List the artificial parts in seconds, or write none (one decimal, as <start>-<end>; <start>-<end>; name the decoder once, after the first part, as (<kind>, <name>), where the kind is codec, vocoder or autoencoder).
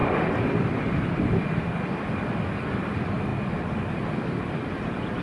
0.0-2.5 (vocoder, BigVGAN v2)